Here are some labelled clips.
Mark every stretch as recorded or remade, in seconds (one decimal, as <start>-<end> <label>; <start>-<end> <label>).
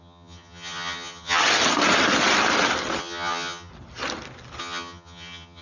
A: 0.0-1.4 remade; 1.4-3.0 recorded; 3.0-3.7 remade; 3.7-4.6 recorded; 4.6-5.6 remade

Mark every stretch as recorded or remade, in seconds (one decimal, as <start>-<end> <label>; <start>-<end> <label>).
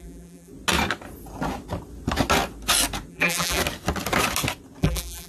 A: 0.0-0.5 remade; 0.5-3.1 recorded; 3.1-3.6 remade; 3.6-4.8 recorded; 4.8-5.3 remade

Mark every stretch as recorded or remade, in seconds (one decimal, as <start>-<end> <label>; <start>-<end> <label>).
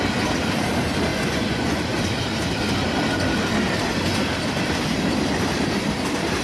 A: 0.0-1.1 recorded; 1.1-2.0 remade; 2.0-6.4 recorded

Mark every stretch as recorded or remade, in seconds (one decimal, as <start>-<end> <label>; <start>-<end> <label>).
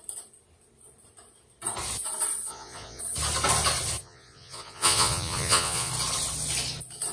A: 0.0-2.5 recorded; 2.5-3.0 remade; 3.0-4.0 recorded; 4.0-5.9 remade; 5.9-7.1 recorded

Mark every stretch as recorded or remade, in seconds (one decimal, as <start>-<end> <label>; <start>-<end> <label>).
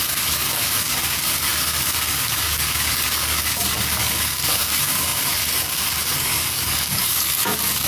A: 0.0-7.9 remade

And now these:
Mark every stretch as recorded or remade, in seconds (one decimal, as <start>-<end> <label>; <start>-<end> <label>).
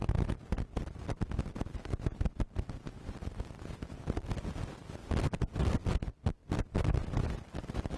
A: 0.0-8.0 recorded